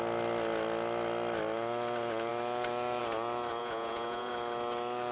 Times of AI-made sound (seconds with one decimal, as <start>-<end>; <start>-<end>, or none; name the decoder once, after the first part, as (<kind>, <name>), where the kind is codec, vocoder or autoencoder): 3.6-4.3 (vocoder, Vocos)